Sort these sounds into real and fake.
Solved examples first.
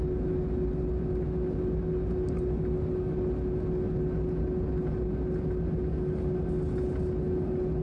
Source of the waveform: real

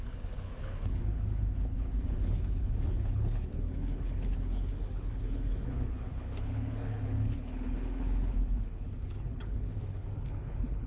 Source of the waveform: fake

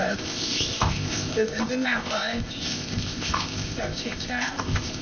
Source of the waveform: fake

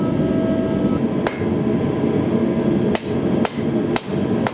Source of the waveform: real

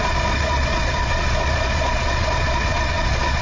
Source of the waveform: fake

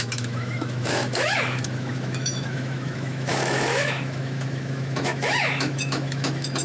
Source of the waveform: fake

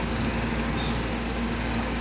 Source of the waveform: fake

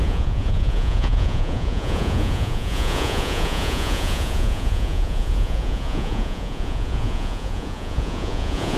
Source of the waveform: fake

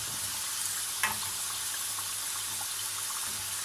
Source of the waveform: real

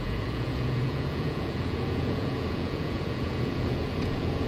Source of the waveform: fake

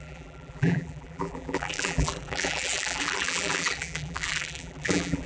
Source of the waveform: fake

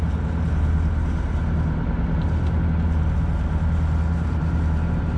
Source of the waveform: real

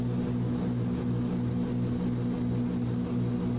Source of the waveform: real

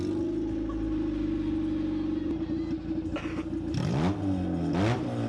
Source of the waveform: real